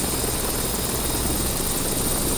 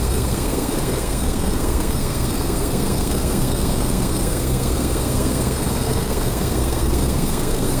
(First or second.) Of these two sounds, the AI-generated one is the second